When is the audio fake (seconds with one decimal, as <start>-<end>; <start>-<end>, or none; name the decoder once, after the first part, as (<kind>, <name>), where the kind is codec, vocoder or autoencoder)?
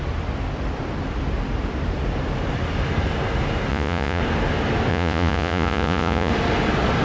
3.7-4.2 (vocoder, Vocos); 4.9-6.3